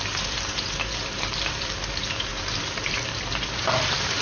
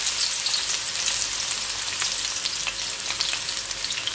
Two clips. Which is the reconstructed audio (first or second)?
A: first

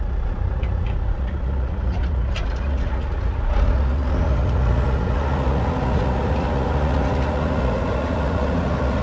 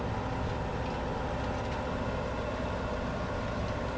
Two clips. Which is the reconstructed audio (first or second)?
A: first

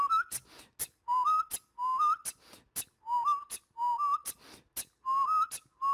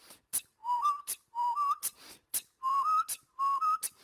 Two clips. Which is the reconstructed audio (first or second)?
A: second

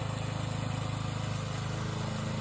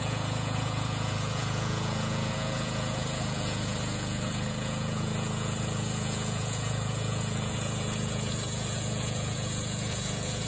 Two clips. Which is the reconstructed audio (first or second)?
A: second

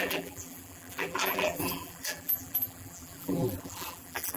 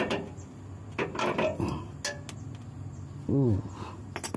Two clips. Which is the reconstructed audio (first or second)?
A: first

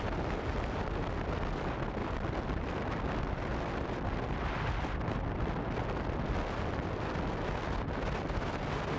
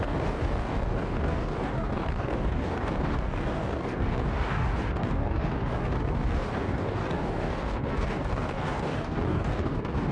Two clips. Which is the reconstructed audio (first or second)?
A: second